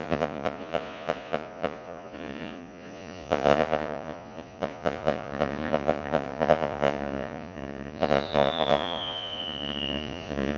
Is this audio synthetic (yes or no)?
yes